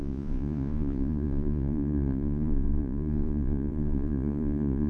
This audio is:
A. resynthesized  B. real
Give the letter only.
A